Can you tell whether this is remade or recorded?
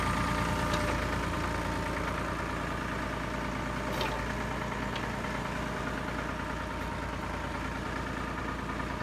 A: recorded